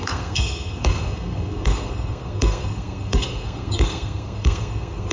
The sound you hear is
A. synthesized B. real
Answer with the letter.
A